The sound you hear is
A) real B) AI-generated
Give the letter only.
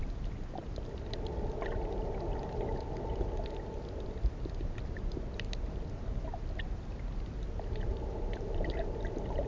A